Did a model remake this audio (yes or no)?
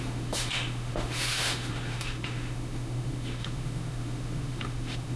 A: yes